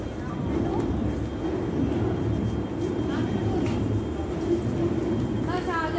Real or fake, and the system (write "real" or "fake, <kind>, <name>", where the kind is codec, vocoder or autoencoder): real